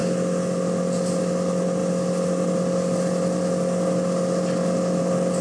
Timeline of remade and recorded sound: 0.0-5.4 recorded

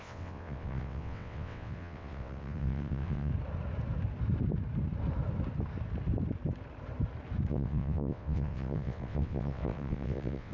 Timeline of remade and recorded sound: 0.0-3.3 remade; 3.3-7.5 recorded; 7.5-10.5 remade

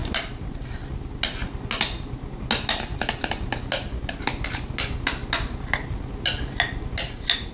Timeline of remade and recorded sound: 0.0-7.5 recorded

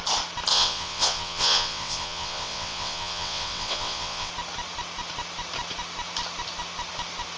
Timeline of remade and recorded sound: 0.0-0.5 recorded; 0.5-4.3 remade; 4.3-7.4 recorded

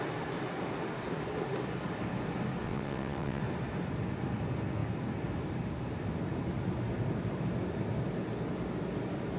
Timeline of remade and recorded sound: 0.0-2.6 recorded; 2.6-3.4 remade; 3.4-9.4 recorded

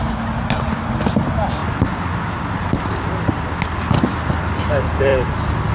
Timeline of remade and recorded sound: 0.0-5.7 recorded